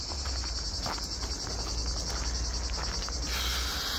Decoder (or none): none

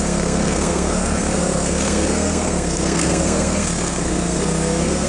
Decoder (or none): codec, SNAC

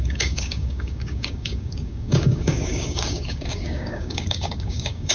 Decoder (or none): codec, DAC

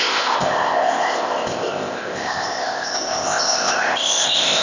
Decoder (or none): codec, ZipCodec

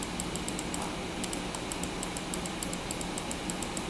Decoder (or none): none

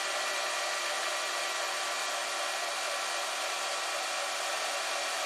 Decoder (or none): none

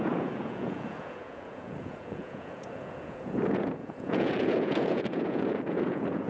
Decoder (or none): vocoder, Vocos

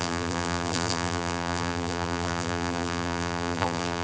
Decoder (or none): vocoder, BigVGAN v2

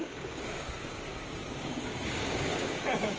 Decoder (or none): codec, DAC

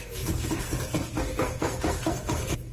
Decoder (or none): codec, SNAC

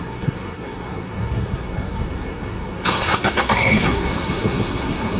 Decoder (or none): codec, SNAC